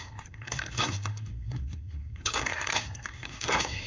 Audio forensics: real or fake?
fake